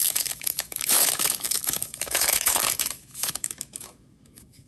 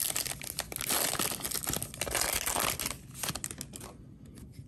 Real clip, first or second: second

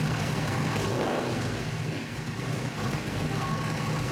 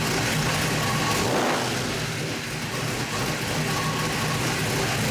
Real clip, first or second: second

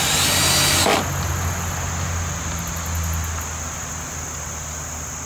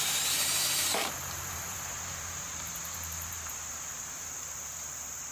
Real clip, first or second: first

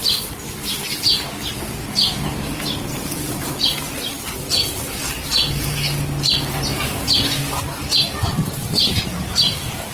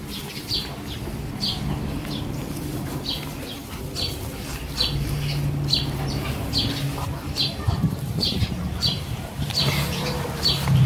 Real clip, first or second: first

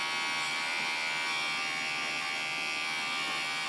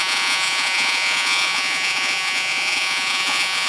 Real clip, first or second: first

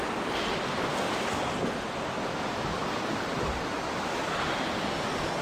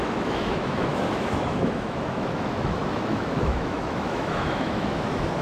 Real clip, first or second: first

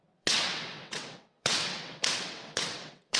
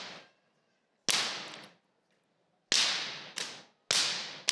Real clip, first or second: second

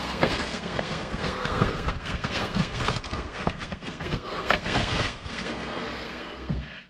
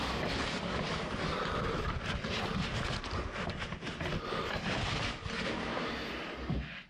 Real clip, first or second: second